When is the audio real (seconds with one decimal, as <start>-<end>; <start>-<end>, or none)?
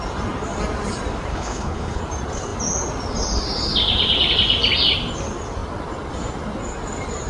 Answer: 0.0-1.3; 2.0-7.3